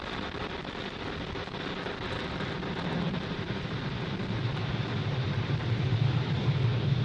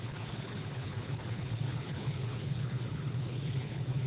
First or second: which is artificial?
second